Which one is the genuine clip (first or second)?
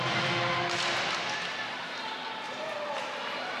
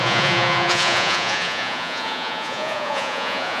first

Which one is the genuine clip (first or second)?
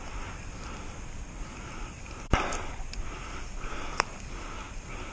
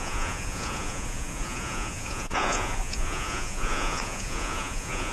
first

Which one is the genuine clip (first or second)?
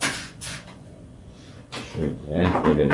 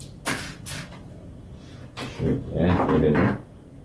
second